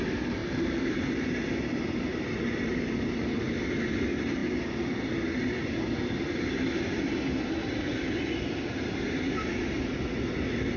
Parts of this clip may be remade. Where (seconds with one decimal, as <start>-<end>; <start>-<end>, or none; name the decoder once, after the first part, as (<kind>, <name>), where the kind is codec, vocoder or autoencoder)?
2.1-3.3 (vocoder, BigVGAN v2)